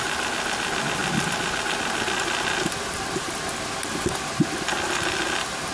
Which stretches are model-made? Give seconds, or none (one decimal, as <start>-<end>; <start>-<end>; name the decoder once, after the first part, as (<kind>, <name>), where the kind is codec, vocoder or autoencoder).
none